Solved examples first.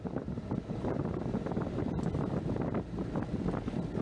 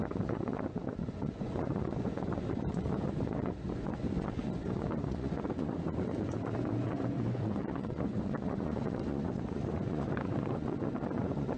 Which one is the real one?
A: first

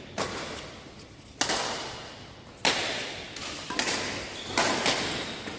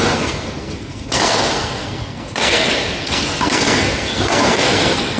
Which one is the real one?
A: first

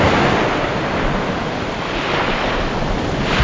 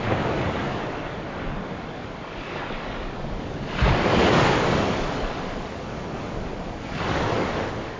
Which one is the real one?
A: first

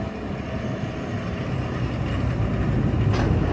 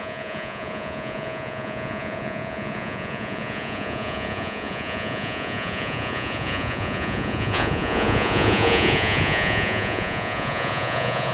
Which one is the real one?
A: first